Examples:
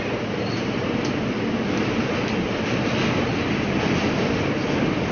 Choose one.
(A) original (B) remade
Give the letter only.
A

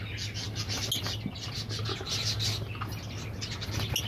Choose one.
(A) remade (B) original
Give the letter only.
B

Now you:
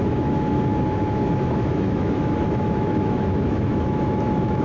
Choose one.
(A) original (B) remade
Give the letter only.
B